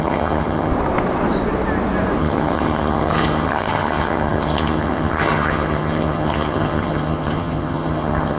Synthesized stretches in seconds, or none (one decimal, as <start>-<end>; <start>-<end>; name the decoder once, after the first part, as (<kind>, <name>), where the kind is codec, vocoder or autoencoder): 0.0-0.7 (vocoder, HiFi-GAN); 2.2-8.4